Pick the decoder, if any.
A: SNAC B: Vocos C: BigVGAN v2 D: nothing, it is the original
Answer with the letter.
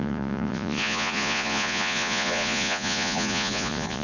B